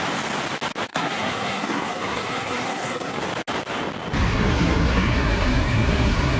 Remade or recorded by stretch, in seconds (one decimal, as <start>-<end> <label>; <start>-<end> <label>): 0.0-0.9 recorded; 0.9-3.2 remade; 3.2-4.3 recorded; 4.3-6.4 remade